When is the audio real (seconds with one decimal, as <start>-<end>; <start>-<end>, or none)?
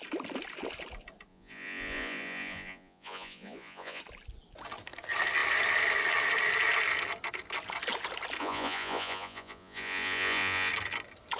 0.0-1.3; 4.0-8.4; 10.7-11.4